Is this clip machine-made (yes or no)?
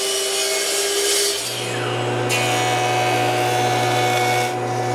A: no